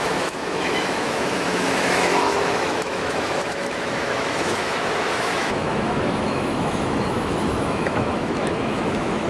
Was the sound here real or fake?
fake